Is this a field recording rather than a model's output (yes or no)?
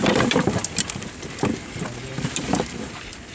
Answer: yes